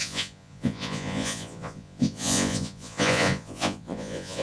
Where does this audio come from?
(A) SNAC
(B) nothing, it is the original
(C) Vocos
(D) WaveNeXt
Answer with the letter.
C